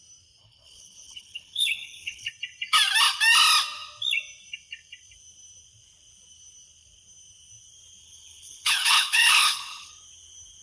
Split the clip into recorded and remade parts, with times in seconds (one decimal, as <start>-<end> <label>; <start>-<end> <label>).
0.0-0.4 recorded; 0.4-2.3 remade; 2.3-8.0 recorded; 8.0-9.9 remade; 9.9-10.6 recorded